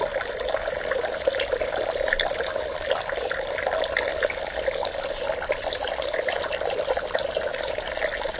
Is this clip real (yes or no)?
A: yes